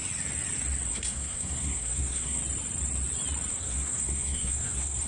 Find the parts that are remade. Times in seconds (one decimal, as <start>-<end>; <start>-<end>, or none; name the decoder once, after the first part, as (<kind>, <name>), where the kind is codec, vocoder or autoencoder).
0.9-2.4 (codec, SNAC); 3.5-5.1

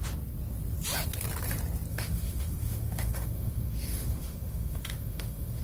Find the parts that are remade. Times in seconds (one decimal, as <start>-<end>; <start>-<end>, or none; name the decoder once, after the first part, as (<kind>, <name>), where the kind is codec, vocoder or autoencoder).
1.9-5.6 (autoencoder, DAC-VAE)